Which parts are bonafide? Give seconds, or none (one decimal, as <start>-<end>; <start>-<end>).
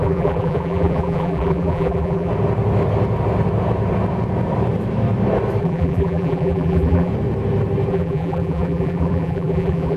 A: 2.3-5.6; 7.1-7.9